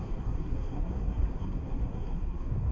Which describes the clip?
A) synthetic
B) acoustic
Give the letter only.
A